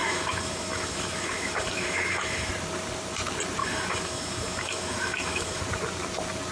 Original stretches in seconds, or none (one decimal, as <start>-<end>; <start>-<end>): 2.5-3.6; 5.6-6.5